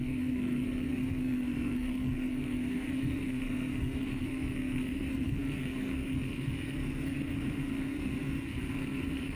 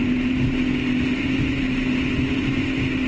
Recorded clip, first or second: second